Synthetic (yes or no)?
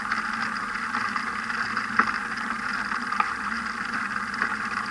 no